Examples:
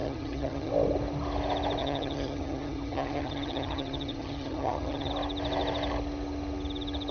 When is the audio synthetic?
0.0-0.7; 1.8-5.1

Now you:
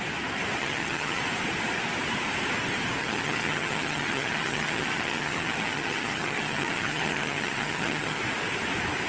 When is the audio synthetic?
0.6-1.2; 3.0-8.2

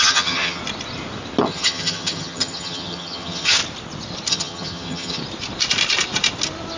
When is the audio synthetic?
0.0-0.6; 1.4-3.6; 4.3-5.2